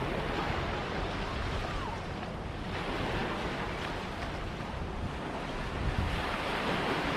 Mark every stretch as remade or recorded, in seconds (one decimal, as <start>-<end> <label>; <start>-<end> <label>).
0.0-0.4 recorded; 0.4-1.6 remade; 1.6-7.2 recorded